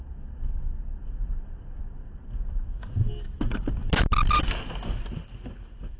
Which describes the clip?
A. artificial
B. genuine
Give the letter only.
B